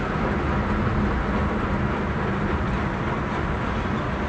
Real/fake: real